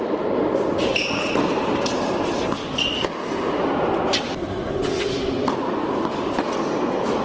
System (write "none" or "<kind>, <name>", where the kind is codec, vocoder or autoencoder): none